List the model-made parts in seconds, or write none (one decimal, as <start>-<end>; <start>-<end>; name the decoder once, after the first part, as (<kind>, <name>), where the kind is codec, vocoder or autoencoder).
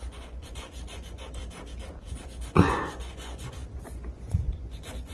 0.0-1.4 (vocoder, Vocos); 2.1-5.1